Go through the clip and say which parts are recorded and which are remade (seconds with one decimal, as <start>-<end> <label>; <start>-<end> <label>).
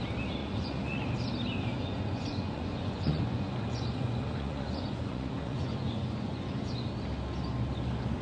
0.0-0.4 recorded; 0.4-1.0 remade; 1.0-1.7 recorded; 1.7-6.6 remade; 6.6-8.2 recorded